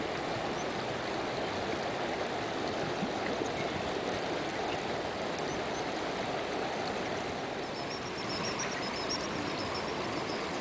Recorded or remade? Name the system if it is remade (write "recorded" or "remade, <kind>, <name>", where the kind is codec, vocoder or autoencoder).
recorded